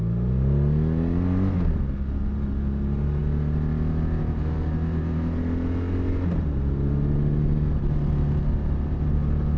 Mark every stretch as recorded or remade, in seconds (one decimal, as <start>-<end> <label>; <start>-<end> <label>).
0.0-9.6 recorded